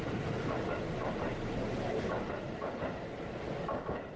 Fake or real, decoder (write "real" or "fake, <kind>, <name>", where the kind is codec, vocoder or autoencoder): real